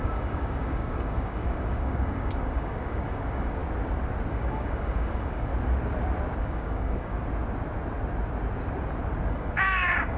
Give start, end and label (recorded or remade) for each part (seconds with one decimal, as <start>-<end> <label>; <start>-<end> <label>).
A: 0.0-3.6 remade; 3.6-4.3 recorded; 4.3-5.5 remade; 5.5-6.4 recorded; 6.4-7.1 remade; 7.1-9.3 recorded; 9.3-10.2 remade